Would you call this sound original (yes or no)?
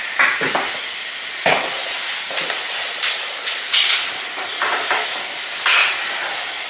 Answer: yes